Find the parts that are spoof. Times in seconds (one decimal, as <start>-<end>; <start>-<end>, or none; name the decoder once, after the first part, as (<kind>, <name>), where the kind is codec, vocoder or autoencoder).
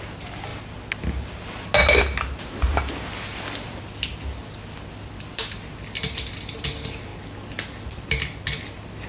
none